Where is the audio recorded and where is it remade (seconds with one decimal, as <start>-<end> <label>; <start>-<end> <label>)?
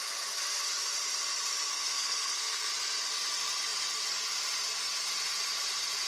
0.0-1.7 recorded; 1.7-2.7 remade; 2.7-6.1 recorded